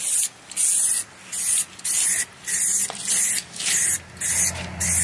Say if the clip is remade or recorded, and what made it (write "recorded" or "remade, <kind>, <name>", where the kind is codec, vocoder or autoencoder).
recorded